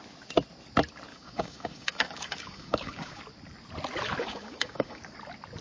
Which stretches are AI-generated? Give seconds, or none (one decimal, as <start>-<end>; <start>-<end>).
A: 1.1-3.2; 4.2-5.0